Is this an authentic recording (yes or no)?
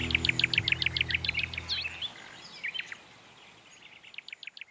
yes